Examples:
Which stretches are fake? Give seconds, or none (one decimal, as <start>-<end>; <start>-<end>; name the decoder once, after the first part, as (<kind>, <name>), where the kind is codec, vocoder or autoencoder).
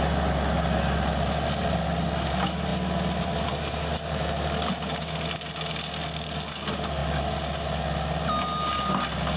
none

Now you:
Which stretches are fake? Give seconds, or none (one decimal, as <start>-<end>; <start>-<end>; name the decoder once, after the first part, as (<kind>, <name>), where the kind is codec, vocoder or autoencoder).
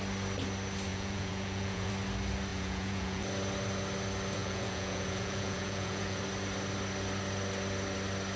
0.9-1.9 (vocoder, Vocos); 2.5-3.2; 4.4-6.2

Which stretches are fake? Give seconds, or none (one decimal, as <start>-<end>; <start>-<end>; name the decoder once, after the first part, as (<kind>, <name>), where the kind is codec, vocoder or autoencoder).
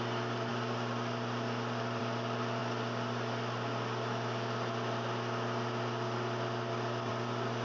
none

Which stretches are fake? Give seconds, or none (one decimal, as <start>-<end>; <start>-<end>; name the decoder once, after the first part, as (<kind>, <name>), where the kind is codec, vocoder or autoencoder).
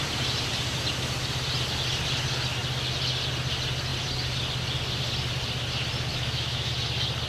6.1-6.7 (autoencoder, DAC-VAE)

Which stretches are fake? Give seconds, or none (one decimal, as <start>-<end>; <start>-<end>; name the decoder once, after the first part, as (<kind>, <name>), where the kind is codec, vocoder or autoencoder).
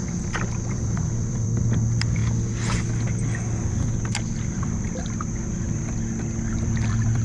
0.7-2.2 (vocoder, BigVGAN v2); 6.5-7.2